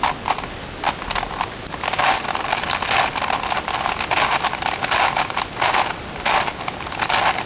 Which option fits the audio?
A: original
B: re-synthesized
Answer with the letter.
A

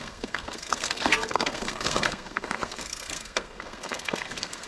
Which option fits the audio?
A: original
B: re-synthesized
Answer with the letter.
B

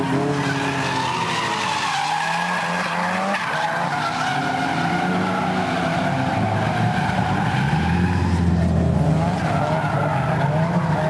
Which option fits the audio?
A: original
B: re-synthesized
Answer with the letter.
A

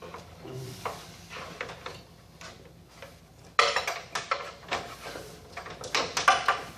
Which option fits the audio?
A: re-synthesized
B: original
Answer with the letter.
B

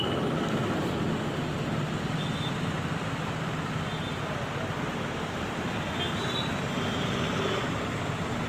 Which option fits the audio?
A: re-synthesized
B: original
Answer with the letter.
B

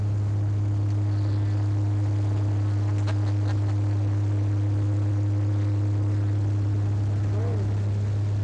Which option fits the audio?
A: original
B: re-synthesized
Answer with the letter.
A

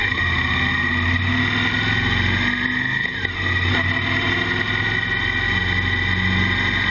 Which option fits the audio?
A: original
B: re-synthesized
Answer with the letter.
A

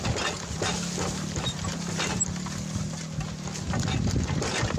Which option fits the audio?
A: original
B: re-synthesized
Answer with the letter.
A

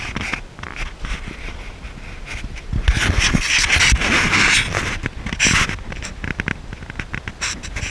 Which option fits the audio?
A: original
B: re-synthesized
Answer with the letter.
A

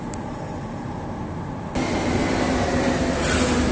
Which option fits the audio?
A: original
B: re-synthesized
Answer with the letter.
A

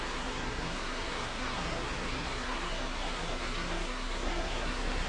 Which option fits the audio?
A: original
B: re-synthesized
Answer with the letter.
B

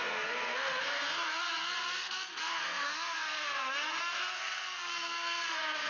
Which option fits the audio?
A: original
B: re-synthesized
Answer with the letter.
B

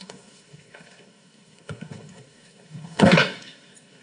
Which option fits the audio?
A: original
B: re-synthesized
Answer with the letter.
B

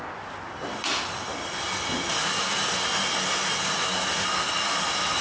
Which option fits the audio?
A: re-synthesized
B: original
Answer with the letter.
B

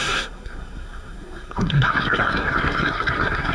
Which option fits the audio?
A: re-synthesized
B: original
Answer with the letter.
A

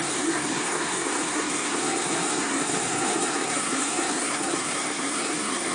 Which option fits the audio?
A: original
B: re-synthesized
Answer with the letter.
B